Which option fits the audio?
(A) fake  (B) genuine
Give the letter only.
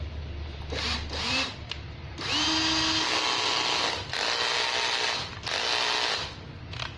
B